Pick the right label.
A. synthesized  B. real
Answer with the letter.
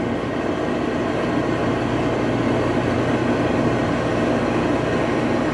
B